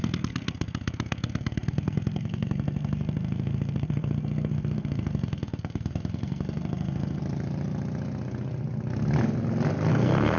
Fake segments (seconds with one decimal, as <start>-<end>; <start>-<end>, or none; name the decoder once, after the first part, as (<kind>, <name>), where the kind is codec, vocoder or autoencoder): 0.0-7.2 (codec, SNAC); 9.9-10.4